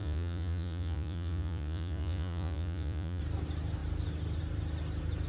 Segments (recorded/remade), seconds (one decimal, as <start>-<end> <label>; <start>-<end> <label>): 0.0-3.2 remade; 3.2-5.3 recorded